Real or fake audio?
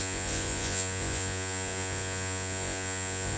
fake